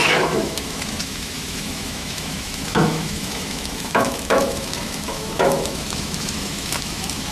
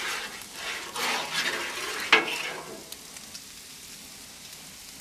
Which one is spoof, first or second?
first